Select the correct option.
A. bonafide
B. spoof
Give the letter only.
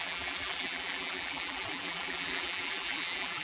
B